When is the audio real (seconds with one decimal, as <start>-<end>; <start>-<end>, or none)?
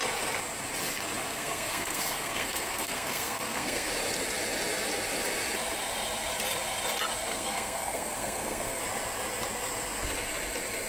0.0-1.3; 3.9-7.3; 8.8-10.9